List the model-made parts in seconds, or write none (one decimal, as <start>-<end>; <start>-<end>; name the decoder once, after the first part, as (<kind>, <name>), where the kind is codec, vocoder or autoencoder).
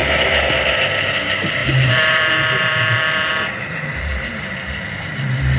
0.0-0.5 (vocoder, BigVGAN v2); 1.6-5.0